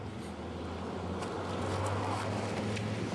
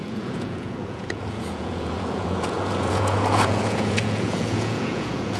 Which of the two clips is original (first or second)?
first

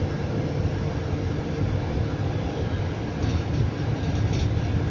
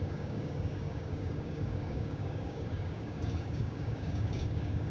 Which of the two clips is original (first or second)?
first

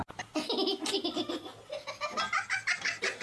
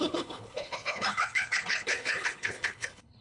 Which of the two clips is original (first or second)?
first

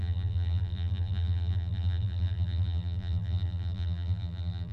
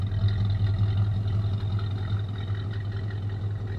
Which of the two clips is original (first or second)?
second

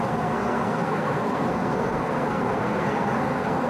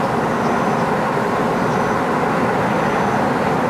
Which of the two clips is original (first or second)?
second